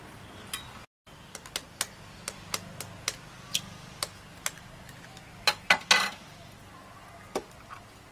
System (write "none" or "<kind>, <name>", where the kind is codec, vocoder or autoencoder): none